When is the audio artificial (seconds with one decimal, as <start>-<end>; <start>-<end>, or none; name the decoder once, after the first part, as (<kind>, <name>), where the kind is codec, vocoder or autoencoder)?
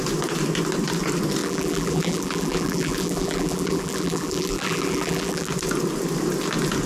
1.4-5.5 (vocoder, BigVGAN v2)